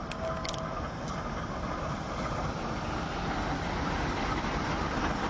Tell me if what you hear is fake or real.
real